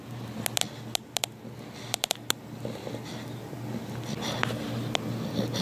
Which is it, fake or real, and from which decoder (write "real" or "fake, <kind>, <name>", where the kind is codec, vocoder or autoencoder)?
real